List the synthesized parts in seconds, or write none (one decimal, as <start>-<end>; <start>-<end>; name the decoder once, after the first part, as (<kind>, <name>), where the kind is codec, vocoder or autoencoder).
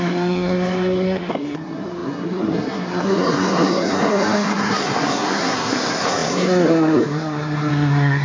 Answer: 0.0-8.2 (codec, SNAC)